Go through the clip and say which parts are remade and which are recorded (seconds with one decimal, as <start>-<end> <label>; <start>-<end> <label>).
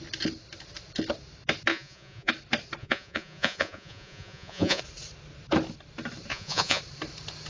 0.0-1.7 recorded; 1.7-2.3 remade; 2.3-2.8 recorded; 2.8-4.8 remade; 4.8-6.3 recorded; 6.3-6.8 remade; 6.8-7.5 recorded